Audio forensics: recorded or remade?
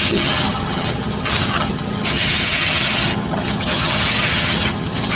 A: remade